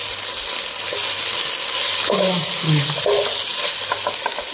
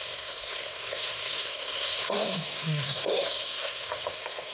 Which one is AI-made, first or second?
second